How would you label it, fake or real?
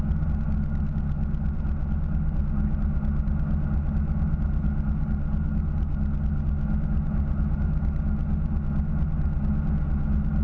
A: real